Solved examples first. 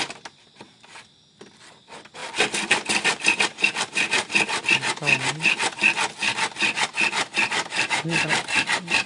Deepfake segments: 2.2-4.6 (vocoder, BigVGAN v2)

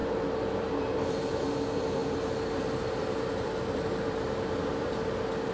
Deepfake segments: 0.0-1.4 (vocoder, BigVGAN v2); 2.0-4.9